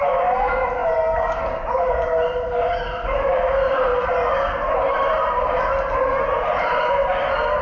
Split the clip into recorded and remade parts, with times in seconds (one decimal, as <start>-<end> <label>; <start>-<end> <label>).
0.0-3.9 recorded; 3.9-5.6 remade; 5.6-7.6 recorded